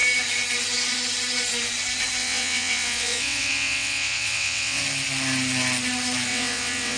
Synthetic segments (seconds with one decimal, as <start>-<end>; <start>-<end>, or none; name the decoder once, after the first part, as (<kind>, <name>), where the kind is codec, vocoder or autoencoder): 2.2-4.8 (vocoder, WaveNeXt); 6.3-7.0